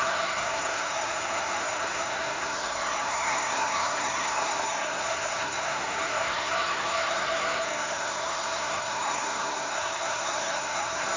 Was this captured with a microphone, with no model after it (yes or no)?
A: no